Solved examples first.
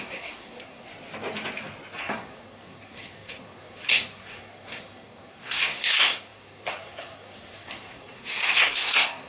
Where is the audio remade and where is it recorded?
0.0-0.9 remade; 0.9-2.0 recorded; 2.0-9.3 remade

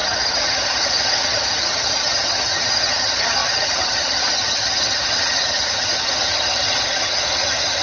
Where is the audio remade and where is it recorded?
0.0-7.8 remade